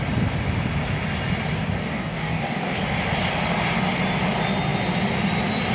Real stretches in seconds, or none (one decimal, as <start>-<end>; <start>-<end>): 0.0-1.8; 2.8-5.7